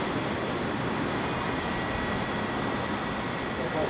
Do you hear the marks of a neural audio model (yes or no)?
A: no